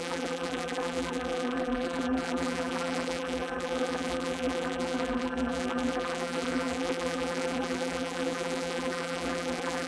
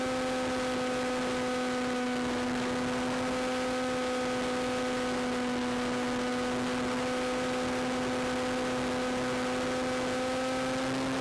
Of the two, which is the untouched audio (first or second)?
second